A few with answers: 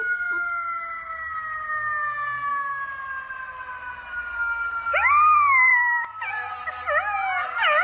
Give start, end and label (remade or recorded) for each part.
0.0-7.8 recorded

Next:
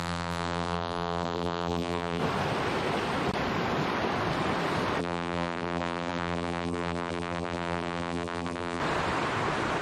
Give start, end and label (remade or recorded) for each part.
0.0-2.2 remade; 2.2-5.0 recorded; 5.0-8.8 remade; 8.8-9.8 recorded

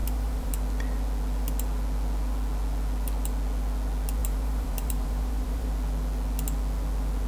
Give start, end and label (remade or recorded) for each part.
0.0-0.5 remade; 0.5-4.2 recorded; 4.2-5.7 remade; 5.7-7.3 recorded

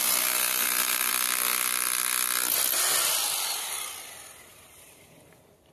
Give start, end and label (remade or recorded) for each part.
0.0-1.1 remade; 1.1-4.5 recorded; 4.5-5.7 remade